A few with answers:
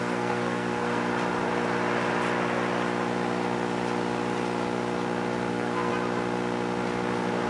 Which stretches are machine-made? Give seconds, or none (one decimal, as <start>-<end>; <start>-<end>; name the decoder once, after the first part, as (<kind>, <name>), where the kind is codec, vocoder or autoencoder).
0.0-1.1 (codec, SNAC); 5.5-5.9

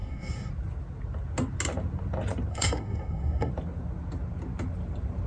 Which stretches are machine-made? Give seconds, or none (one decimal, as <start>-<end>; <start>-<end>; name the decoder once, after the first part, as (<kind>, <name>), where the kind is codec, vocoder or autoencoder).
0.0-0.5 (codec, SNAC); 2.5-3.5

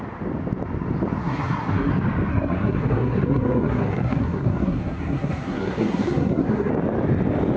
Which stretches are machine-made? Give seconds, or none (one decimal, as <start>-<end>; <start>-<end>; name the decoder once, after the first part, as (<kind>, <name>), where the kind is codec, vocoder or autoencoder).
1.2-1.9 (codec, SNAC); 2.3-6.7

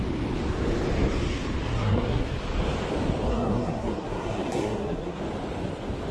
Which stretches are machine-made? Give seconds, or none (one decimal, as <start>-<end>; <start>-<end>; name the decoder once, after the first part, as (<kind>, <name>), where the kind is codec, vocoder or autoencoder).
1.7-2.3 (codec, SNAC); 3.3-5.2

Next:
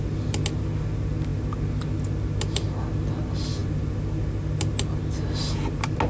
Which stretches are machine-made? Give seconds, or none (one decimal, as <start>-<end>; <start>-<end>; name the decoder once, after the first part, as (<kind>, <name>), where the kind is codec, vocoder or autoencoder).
none

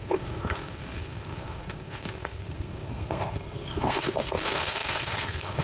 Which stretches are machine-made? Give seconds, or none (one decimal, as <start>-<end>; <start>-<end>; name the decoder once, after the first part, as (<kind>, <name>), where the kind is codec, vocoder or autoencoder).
0.0-5.6 (codec, SNAC)

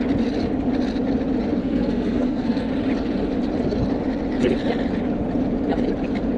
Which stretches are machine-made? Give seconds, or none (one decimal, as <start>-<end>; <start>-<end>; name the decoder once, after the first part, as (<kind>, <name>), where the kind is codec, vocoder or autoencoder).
1.6-2.7 (codec, SNAC)